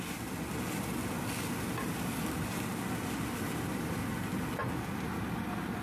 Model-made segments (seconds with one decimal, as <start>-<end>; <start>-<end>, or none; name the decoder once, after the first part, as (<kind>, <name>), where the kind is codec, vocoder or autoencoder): none